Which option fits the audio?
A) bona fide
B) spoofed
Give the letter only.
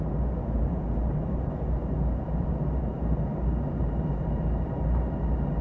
B